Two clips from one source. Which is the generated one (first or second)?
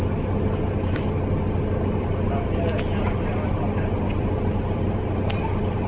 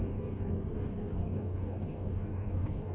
second